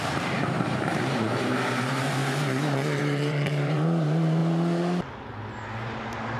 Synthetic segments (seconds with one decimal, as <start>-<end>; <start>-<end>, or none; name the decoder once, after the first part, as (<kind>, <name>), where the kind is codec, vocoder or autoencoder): 0.0-2.2 (vocoder, BigVGAN v2); 3.0-4.4; 5.8-6.4

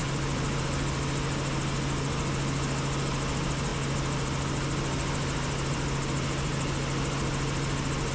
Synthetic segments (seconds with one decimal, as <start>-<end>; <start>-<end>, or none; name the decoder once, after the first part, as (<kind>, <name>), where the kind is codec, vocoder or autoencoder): 0.0-0.6 (vocoder, BigVGAN v2)